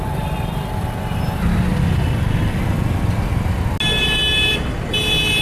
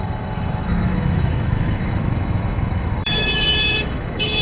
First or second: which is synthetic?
second